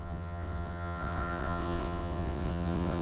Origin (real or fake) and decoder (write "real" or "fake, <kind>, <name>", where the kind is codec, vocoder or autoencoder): fake, vocoder, WaveNeXt